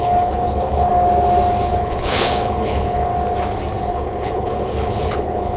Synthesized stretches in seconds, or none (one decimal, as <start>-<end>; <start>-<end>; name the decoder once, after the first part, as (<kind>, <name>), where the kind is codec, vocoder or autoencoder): 0.0-0.9 (codec, HILCodec); 1.7-3.1; 3.8-5.6